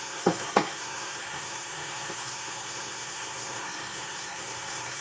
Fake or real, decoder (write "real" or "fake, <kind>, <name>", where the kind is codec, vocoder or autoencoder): fake, codec, SNAC